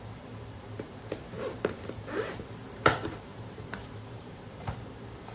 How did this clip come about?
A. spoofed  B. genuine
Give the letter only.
A